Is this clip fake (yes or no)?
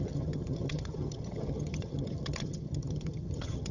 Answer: yes